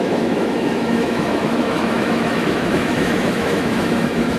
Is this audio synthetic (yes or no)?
yes